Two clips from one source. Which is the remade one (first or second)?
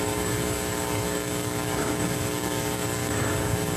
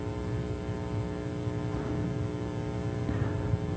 first